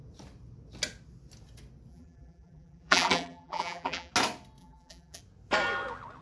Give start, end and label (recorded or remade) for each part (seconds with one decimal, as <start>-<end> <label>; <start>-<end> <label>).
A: 0.0-1.9 recorded; 1.9-4.1 remade; 4.1-4.6 recorded; 4.6-5.2 remade; 5.2-6.2 recorded